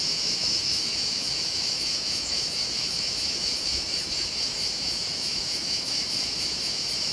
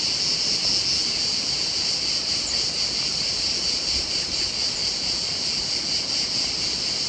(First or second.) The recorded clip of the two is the second